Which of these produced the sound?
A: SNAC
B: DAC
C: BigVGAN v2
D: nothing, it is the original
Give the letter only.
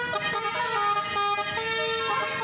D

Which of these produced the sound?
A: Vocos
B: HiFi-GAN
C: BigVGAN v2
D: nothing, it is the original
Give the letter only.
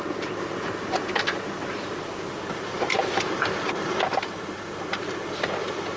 C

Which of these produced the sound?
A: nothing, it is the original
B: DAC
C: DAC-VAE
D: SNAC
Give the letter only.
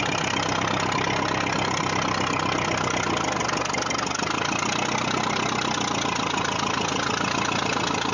A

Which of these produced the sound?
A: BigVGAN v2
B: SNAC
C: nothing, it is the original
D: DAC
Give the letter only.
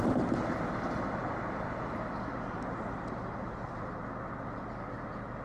A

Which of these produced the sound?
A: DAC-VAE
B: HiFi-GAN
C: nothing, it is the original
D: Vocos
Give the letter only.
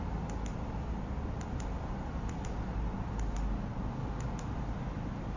C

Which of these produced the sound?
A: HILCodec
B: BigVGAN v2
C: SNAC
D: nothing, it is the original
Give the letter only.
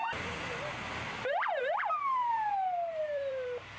B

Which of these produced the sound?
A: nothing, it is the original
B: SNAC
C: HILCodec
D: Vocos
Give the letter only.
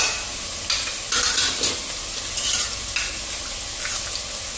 A